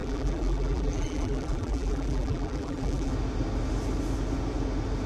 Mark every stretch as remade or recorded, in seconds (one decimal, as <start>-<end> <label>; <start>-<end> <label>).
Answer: 0.0-3.1 remade; 3.1-5.1 recorded